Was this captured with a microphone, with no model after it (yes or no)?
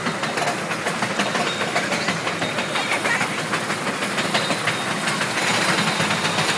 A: yes